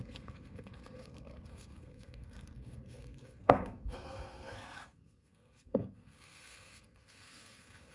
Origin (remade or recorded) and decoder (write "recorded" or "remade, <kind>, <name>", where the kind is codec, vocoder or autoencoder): remade, codec, SNAC